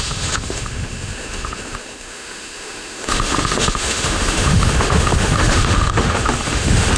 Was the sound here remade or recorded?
remade